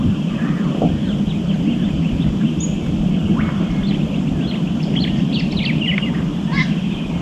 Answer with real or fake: real